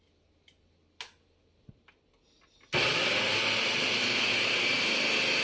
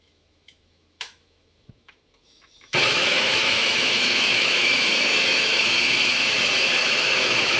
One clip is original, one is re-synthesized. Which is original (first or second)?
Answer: first